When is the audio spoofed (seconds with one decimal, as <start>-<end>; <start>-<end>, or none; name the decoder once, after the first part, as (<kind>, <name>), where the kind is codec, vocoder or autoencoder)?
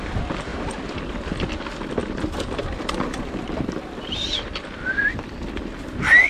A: none